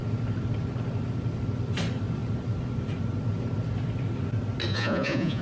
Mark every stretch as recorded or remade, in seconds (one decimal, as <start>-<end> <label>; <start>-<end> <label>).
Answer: 0.0-4.7 recorded; 4.7-5.4 remade